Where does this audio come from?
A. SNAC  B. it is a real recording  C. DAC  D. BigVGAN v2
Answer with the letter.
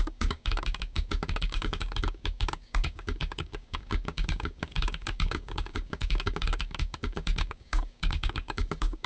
C